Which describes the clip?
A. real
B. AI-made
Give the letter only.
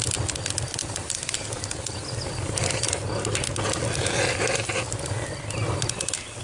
A